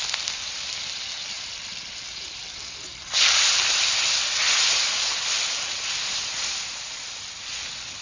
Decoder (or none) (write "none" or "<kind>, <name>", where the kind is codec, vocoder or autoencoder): none